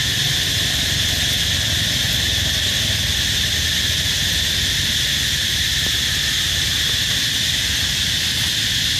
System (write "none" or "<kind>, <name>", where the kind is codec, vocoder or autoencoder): none